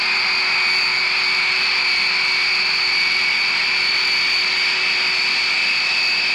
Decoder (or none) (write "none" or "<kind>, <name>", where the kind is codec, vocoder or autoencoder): none